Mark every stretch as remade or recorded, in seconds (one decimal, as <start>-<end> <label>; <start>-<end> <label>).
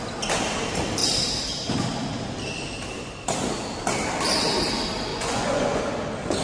0.0-5.1 recorded; 5.1-5.8 remade; 5.8-6.4 recorded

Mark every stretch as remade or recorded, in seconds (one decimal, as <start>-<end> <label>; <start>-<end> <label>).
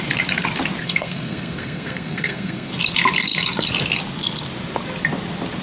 0.0-0.8 recorded; 0.8-2.7 remade; 2.7-5.6 recorded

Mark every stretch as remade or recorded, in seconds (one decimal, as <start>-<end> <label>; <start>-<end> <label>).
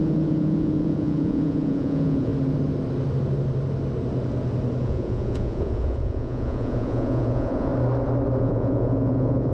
0.0-2.3 remade; 2.3-4.8 recorded; 4.8-7.7 remade; 7.7-8.4 recorded; 8.4-9.5 remade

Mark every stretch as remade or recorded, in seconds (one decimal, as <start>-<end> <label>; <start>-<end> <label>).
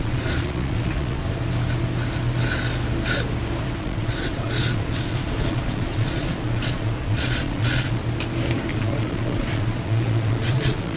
0.0-1.2 remade; 1.2-3.8 recorded; 3.8-8.0 remade; 8.0-8.7 recorded; 8.7-11.0 remade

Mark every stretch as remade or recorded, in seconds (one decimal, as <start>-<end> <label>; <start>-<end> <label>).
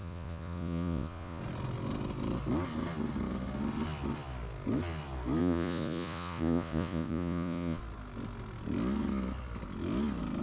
0.0-1.4 remade; 1.4-5.4 recorded; 5.4-7.8 remade; 7.8-10.4 recorded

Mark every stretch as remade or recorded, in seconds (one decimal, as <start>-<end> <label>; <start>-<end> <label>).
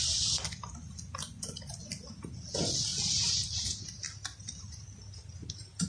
0.0-5.9 recorded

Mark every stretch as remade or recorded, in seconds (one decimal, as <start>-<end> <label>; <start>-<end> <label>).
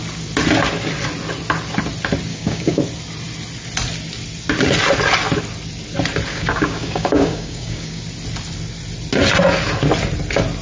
0.0-2.3 recorded; 2.3-2.8 remade; 2.8-6.3 recorded; 6.3-8.0 remade; 8.0-10.6 recorded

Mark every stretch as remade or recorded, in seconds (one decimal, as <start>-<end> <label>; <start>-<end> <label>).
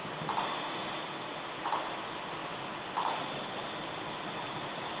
0.0-5.0 recorded